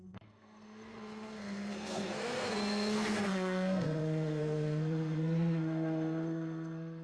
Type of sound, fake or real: fake